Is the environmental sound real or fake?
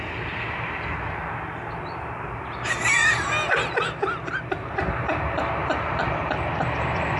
real